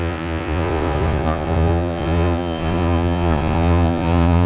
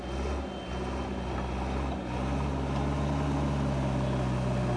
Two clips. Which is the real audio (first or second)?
second